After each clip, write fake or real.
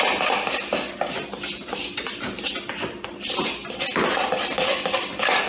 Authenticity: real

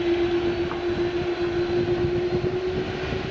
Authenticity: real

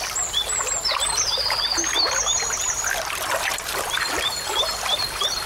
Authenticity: real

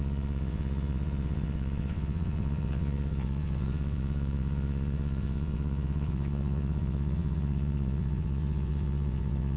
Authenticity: fake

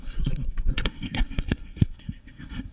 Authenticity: fake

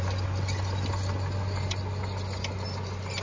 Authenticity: real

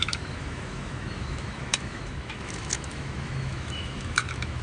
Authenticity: fake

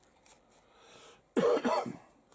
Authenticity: real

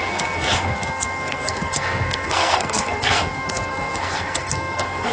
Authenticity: fake